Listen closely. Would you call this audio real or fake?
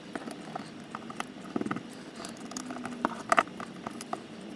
real